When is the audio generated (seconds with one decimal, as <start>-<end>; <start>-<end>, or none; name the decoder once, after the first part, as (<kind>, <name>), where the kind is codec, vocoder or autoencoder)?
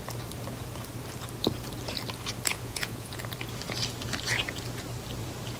2.5-3.2 (vocoder, Vocos)